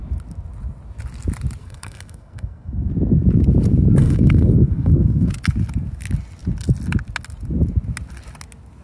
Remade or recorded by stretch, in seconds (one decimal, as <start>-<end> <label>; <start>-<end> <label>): 0.0-1.6 recorded; 1.6-2.9 remade; 2.9-4.0 recorded; 4.0-5.3 remade; 5.3-8.8 recorded